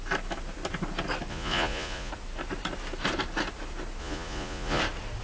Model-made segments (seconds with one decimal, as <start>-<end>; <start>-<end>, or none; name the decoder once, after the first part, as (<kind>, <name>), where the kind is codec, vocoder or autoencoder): 1.3-2.1 (vocoder, Vocos); 4.0-4.8